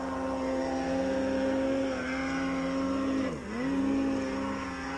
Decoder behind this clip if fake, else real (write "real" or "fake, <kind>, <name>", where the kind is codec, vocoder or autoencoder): real